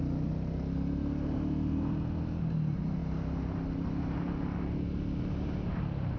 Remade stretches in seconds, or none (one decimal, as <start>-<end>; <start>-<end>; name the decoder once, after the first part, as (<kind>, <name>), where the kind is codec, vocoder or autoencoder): none